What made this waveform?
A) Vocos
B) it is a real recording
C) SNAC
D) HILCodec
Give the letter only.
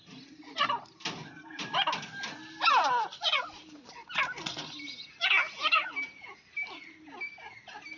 B